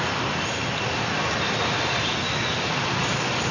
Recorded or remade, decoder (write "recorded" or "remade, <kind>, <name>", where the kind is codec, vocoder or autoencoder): recorded